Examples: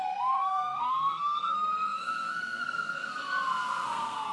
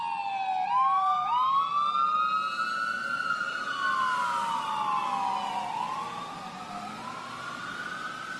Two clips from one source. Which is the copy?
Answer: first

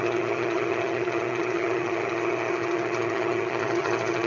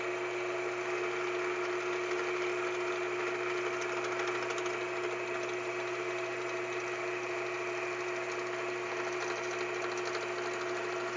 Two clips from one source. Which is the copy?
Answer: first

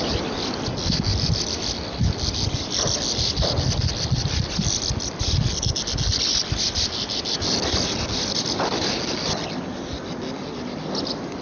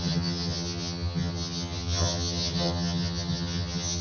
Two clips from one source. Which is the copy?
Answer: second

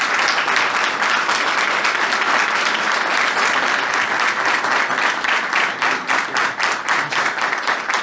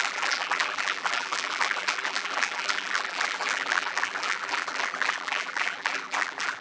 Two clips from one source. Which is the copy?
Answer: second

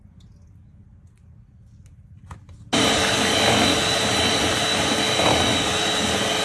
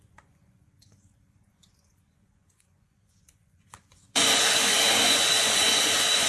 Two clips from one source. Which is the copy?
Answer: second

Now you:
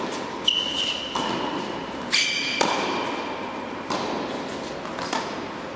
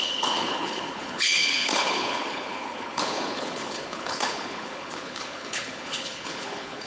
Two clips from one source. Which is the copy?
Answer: second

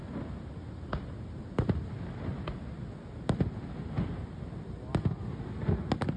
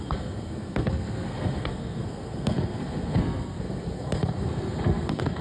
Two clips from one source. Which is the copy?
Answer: second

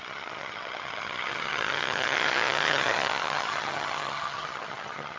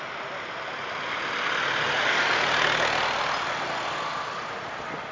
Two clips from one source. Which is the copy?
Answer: first